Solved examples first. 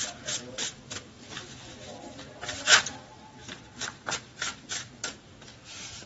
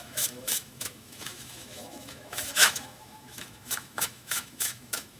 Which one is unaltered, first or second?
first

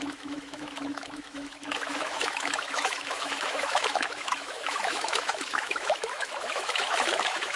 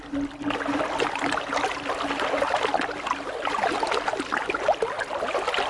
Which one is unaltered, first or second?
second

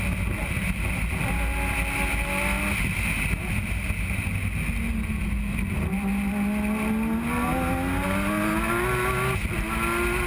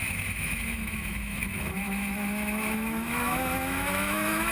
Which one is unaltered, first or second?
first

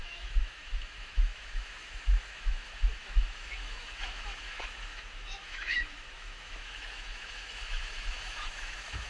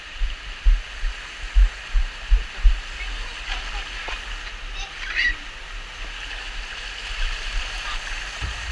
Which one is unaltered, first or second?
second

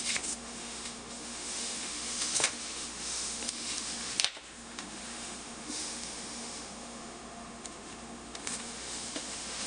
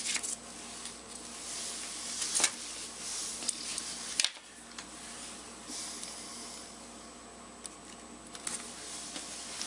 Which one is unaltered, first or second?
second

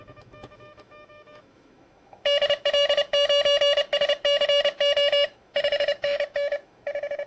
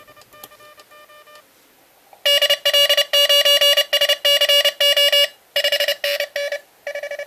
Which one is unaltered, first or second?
second